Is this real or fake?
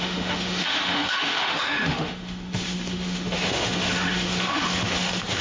fake